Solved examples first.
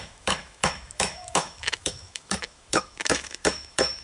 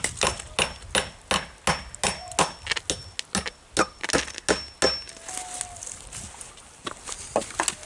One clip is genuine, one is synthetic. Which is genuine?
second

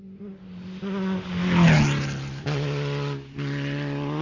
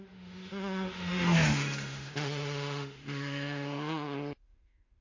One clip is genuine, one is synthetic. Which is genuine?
first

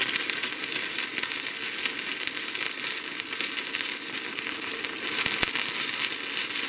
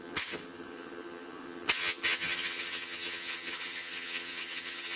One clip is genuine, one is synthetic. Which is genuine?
first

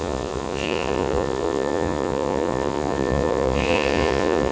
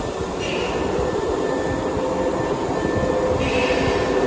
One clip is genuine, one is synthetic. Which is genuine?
second